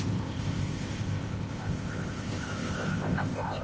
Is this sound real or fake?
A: fake